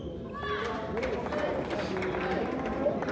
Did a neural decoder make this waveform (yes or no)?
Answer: no